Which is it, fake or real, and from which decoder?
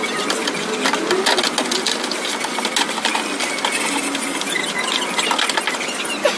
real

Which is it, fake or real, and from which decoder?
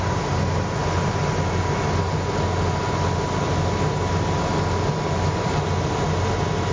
real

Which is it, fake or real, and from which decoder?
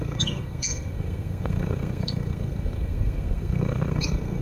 fake, codec, SNAC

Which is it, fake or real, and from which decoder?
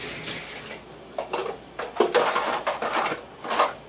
real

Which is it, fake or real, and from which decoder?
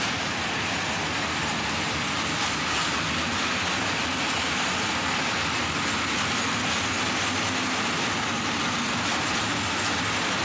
real